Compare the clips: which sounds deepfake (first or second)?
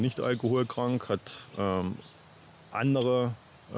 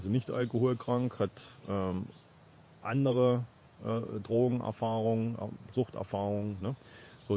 second